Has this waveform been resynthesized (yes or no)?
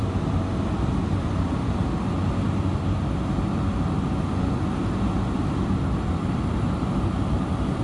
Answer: yes